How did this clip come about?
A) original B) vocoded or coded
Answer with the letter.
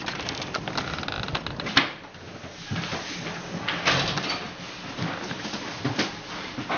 A